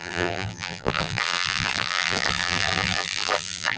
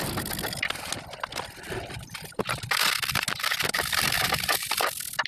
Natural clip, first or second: second